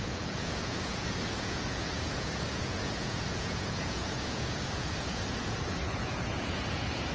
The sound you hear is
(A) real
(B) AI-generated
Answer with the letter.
B